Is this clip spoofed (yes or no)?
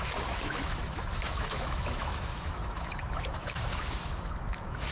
yes